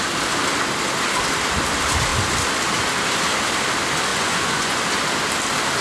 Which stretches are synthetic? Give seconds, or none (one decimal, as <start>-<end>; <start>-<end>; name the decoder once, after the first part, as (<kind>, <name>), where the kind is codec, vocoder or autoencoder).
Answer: 4.1-4.8 (vocoder, Vocos)